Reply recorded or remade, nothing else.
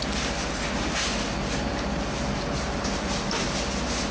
recorded